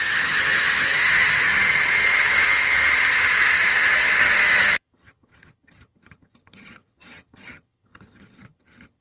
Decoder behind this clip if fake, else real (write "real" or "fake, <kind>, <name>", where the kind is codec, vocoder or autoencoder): fake, vocoder, HiFi-GAN